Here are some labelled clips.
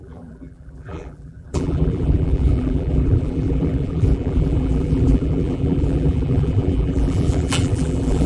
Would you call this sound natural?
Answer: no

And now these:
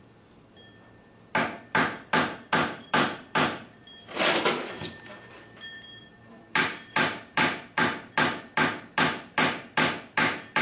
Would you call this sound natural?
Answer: no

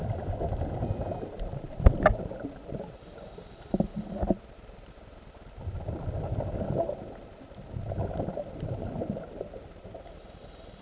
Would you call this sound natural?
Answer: yes